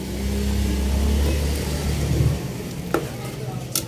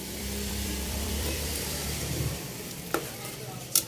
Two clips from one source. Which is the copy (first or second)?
second